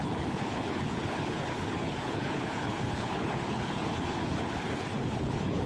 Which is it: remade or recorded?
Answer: remade